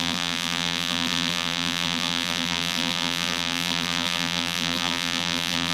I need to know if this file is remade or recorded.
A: remade